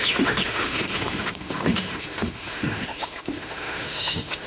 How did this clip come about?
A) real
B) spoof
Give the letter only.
B